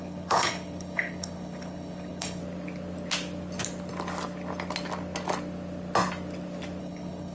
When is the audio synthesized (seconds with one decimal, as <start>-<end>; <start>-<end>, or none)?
0.0-2.4; 6.8-7.3